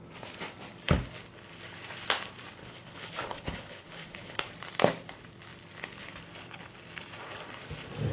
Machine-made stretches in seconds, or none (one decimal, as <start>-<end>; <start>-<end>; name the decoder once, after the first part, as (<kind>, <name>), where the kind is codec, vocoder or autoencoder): 2.6-4.5 (codec, HILCodec)